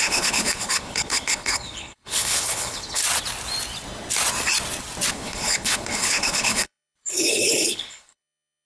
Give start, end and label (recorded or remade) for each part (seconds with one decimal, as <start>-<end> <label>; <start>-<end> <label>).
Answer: 0.0-3.0 remade; 3.0-5.1 recorded; 5.1-8.7 remade